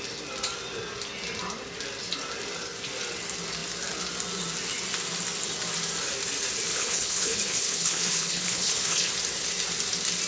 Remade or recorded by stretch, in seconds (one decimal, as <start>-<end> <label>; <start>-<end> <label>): 0.0-6.7 recorded; 6.7-9.1 remade; 9.1-10.3 recorded